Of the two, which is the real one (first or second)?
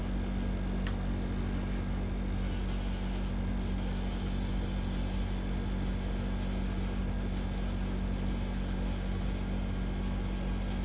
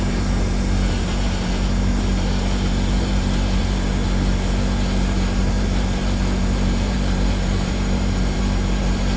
first